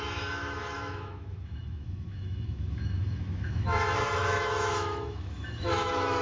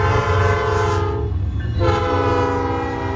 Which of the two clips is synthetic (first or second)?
first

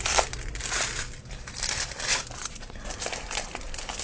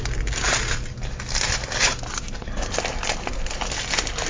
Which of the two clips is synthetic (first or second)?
first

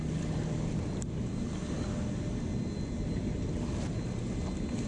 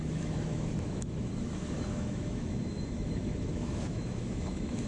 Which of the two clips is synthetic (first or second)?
second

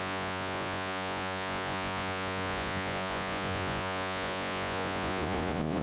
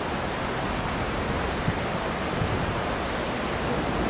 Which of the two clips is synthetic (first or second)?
first